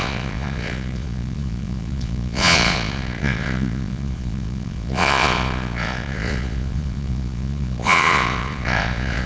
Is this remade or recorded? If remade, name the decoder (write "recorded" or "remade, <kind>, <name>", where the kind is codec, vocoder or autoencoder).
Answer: remade, vocoder, Vocos